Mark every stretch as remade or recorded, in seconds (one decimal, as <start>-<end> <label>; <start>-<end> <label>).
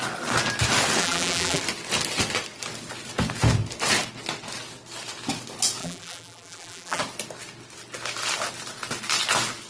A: 0.0-1.0 recorded; 1.0-1.6 remade; 1.6-5.8 recorded; 5.8-7.0 remade; 7.0-9.7 recorded